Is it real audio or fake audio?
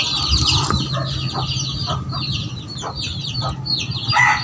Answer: real